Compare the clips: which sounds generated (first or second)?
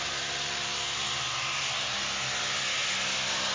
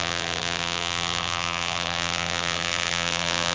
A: second